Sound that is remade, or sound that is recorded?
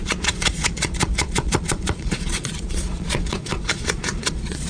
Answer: remade